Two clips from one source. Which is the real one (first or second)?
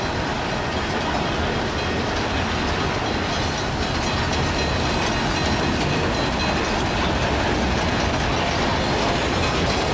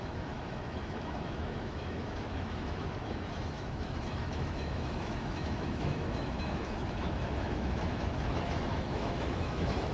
first